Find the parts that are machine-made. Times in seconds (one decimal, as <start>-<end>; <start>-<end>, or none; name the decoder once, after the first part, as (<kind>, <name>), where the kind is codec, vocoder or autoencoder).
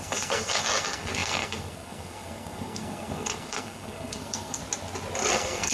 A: 0.0-4.6 (codec, SNAC); 5.3-5.7